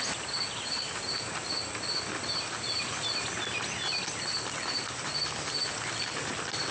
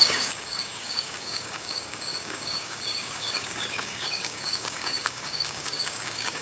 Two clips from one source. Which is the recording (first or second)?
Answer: first